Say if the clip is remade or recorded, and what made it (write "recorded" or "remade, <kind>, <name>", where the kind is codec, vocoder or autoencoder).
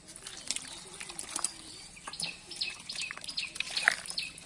recorded